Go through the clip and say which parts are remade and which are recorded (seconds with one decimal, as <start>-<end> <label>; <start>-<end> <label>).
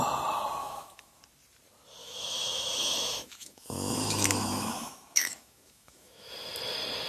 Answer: 0.0-0.6 recorded; 0.6-1.2 remade; 1.2-2.0 recorded; 2.0-6.3 remade; 6.3-7.1 recorded